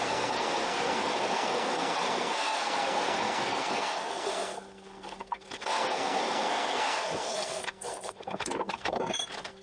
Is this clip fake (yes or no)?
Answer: yes